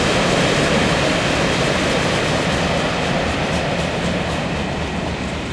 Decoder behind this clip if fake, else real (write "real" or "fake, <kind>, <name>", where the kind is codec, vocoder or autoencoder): real